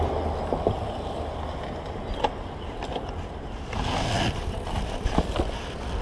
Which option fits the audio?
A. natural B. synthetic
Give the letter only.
A